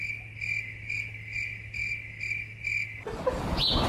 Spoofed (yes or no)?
no